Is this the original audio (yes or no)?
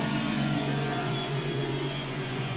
no